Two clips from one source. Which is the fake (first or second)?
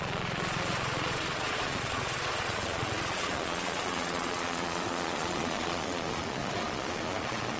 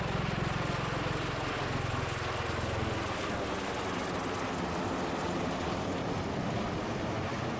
first